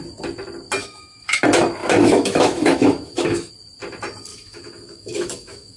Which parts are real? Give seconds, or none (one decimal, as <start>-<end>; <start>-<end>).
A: 0.0-0.8; 1.4-1.8; 3.5-4.3